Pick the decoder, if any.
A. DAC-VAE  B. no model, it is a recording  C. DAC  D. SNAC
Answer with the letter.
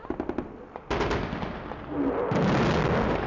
B